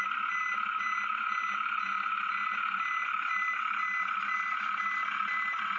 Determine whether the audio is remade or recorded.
recorded